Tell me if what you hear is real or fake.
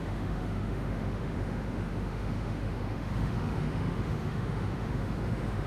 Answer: fake